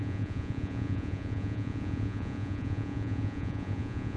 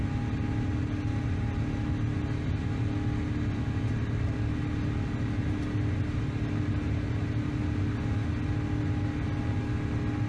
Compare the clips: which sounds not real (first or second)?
first